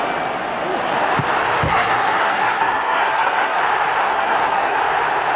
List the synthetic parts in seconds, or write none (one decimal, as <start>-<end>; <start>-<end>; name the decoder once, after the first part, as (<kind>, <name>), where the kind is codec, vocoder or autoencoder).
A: 1.7-3.6 (codec, SNAC); 4.0-4.8